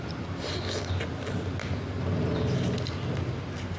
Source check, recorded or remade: recorded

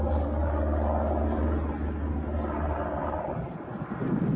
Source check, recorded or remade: recorded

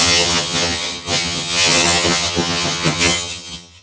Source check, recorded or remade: remade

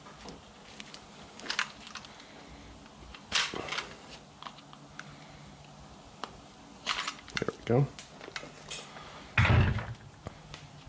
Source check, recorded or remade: recorded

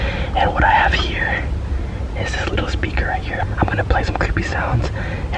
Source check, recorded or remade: recorded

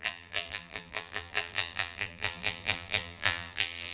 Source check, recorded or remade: remade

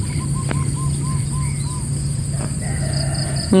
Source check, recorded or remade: remade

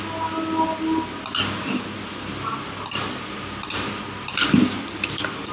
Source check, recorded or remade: recorded